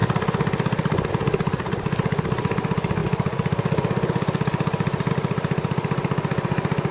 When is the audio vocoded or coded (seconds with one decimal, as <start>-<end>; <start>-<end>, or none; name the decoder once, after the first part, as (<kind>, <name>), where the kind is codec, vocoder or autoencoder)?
none